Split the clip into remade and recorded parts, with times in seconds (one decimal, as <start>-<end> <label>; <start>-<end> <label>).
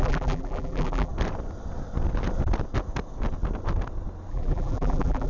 0.0-1.1 remade; 1.1-4.3 recorded; 4.3-5.3 remade